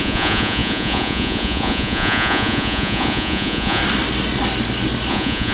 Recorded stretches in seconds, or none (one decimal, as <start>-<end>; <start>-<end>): 3.8-5.1